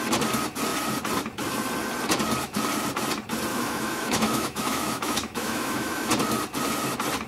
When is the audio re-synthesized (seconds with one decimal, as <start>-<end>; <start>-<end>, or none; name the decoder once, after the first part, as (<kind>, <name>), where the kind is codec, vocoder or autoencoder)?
3.5-6.1 (autoencoder, DAC-VAE)